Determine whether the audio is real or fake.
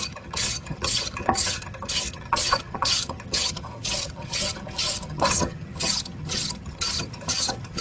fake